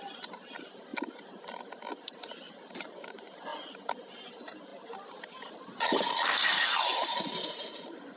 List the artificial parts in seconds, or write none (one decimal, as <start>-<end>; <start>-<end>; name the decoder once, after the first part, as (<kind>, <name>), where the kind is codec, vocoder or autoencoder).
0.0-0.9 (vocoder, BigVGAN v2); 1.9-3.5; 4.3-6.4; 7.2-8.2